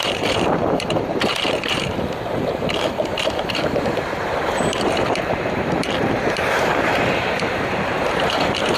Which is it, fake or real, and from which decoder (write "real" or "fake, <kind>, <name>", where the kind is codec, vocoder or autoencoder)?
fake, vocoder, BigVGAN v2